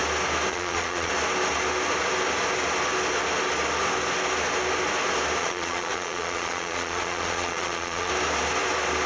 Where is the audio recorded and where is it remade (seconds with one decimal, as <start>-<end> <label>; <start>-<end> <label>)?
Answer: 0.0-0.5 recorded; 0.5-1.1 remade; 1.1-5.4 recorded; 5.4-8.1 remade; 8.1-9.1 recorded